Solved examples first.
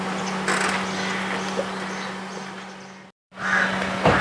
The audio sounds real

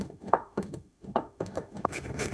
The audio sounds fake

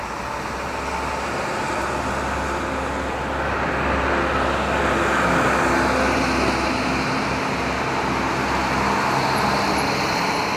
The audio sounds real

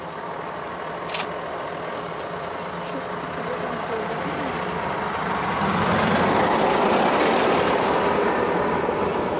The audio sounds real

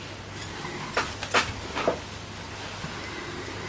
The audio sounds real